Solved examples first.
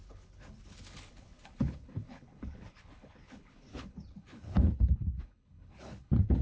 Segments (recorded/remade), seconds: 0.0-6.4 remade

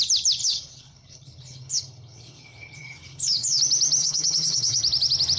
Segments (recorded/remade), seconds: 0.0-0.4 recorded; 0.4-3.6 remade; 3.6-4.0 recorded; 4.0-4.8 remade; 4.8-5.4 recorded

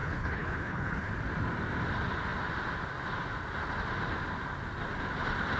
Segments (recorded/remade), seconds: 0.0-1.1 remade; 1.1-5.6 recorded

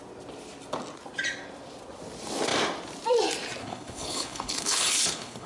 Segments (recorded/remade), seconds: 0.0-3.6 recorded; 3.6-5.5 remade

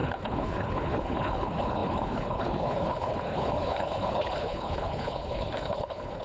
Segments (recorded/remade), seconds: 0.0-6.2 remade

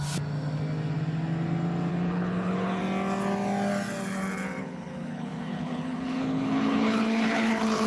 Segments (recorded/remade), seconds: 0.0-1.9 recorded; 1.9-2.8 remade; 2.8-4.6 recorded; 4.6-7.9 remade

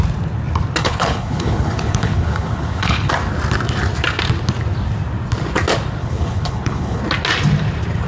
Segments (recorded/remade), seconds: 0.0-0.8 recorded; 0.8-3.1 remade; 3.1-6.0 recorded; 6.0-7.0 remade; 7.0-8.1 recorded